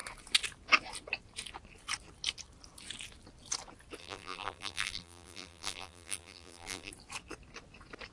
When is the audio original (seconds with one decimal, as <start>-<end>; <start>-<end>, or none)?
0.0-4.0; 6.9-8.1